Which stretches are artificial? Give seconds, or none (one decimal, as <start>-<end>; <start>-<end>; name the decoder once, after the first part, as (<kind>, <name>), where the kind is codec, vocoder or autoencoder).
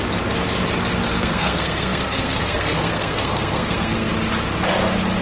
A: 1.1-4.1 (codec, SNAC)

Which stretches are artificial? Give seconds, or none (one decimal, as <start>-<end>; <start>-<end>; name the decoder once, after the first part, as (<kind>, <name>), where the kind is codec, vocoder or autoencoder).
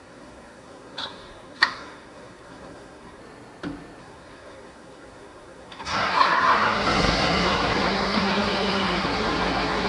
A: 0.0-3.2 (codec, SNAC); 4.0-9.9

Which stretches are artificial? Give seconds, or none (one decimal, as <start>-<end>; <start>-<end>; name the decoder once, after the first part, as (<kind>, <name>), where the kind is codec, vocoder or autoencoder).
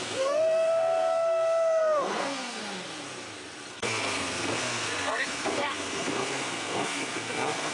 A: 0.0-2.6 (codec, SNAC); 3.7-7.7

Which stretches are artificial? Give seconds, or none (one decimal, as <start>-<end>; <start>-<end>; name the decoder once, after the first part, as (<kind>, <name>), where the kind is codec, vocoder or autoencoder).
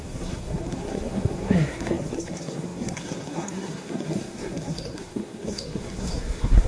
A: 0.0-6.7 (codec, SNAC)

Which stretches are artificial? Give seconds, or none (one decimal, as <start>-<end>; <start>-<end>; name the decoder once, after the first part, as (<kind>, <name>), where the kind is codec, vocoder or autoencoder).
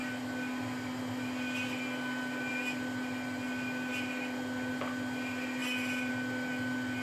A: none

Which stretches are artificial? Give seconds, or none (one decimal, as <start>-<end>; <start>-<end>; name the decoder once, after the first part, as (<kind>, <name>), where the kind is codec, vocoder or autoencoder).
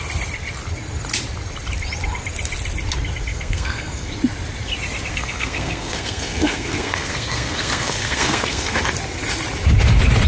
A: 3.3-4.1 (codec, SNAC); 5.1-8.8